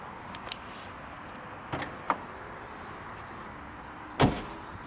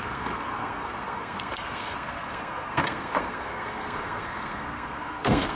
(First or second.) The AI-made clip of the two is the second